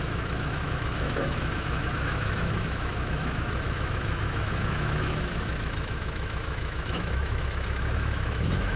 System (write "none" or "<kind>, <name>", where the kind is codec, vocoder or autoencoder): autoencoder, DAC-VAE